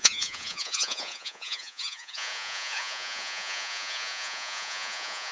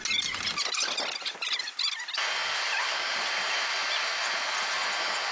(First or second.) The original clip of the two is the second